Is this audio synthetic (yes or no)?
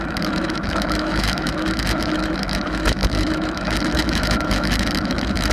yes